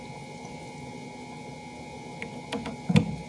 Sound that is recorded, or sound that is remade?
recorded